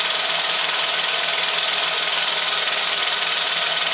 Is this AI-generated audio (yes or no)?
no